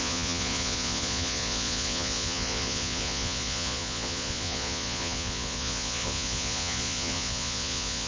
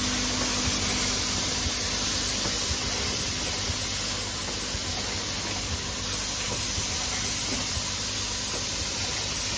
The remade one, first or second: first